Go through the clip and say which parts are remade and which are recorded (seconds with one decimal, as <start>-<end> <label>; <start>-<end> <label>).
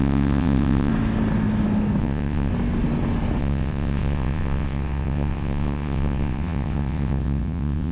0.0-0.9 remade; 0.9-2.0 recorded; 2.0-2.5 remade; 2.5-3.4 recorded; 3.4-7.9 remade